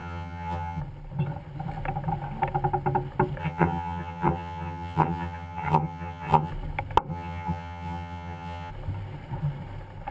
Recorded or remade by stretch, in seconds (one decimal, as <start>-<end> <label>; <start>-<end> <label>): 0.0-0.8 remade; 0.8-3.4 recorded; 3.4-6.5 remade; 6.5-7.1 recorded; 7.1-8.7 remade; 8.7-10.1 recorded

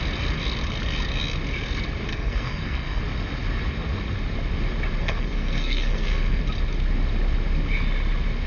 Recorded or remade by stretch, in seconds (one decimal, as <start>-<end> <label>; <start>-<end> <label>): 0.0-2.1 recorded; 2.1-3.0 remade; 3.0-5.0 recorded; 5.0-6.4 remade; 6.4-8.5 recorded

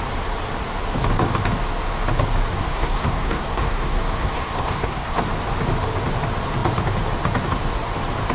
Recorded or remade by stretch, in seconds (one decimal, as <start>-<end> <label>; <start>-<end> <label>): 0.0-2.6 recorded; 2.6-5.2 remade; 5.2-8.3 recorded

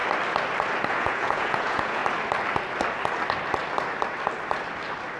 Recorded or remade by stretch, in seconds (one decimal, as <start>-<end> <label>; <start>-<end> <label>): 0.0-0.9 recorded; 0.9-2.0 remade; 2.0-5.2 recorded

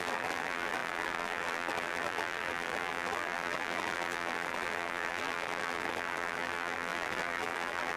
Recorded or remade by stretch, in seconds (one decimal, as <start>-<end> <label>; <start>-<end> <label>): 0.0-8.0 remade

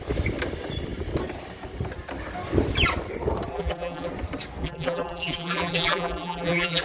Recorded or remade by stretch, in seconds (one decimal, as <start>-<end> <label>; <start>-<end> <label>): 0.0-3.5 recorded; 3.5-4.1 remade; 4.1-4.6 recorded; 4.6-6.8 remade

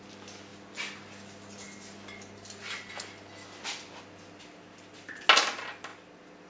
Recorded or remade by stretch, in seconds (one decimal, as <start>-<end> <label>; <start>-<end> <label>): 0.0-6.5 recorded